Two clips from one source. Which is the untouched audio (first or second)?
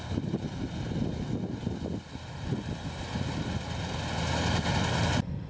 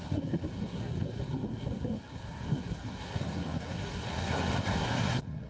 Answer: first